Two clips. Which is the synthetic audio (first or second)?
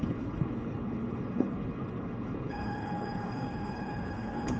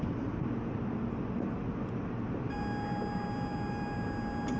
first